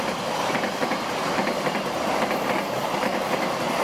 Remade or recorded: recorded